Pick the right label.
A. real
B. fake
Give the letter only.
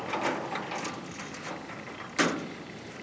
A